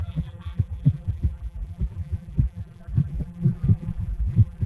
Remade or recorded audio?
remade